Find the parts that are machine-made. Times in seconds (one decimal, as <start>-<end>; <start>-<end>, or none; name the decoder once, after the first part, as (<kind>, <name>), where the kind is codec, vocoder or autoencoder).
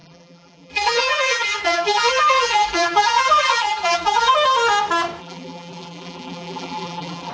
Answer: 0.0-4.3 (vocoder, BigVGAN v2); 5.2-7.3